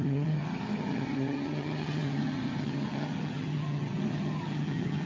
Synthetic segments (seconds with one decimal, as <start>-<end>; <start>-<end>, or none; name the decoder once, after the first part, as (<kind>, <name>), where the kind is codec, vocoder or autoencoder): 0.0-5.1 (vocoder, HiFi-GAN)